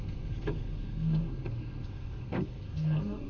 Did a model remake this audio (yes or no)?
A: yes